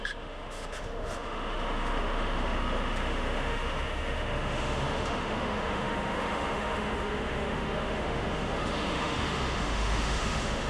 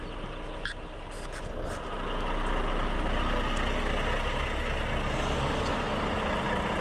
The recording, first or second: second